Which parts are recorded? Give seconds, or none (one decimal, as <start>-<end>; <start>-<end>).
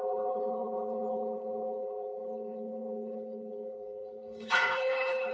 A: none